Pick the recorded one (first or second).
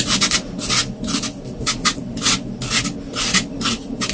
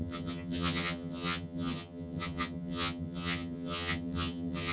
first